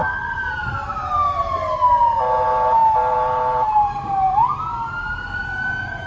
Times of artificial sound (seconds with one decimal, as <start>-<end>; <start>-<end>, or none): 2.8-4.6